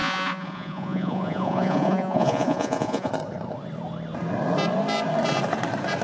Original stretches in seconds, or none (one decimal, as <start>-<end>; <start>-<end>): 3.1-6.0